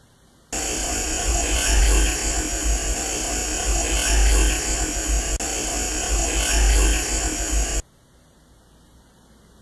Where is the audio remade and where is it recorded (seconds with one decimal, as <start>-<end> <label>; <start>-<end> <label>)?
0.0-0.8 recorded; 0.8-1.8 remade; 1.8-9.6 recorded